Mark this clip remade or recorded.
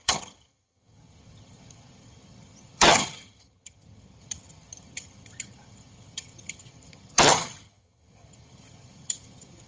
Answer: remade